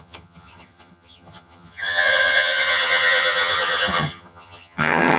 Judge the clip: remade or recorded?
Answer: remade